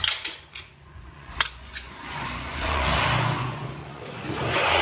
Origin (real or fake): fake